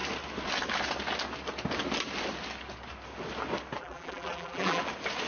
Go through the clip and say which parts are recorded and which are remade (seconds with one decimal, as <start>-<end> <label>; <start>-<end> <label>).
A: 0.0-3.8 recorded; 3.8-4.8 remade; 4.8-5.3 recorded